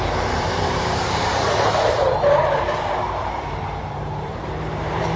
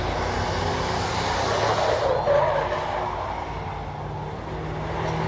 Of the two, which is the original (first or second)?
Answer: second